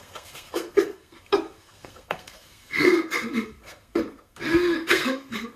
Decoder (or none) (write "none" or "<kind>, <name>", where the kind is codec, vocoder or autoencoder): codec, SNAC